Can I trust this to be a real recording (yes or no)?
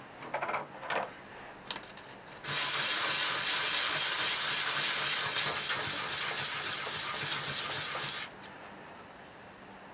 yes